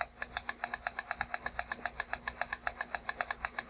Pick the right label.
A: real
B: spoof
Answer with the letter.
A